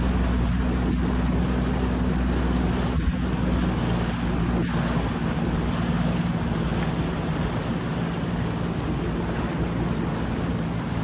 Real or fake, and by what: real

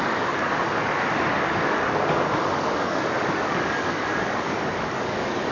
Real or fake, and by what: fake, codec, DAC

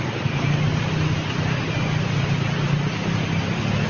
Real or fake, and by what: real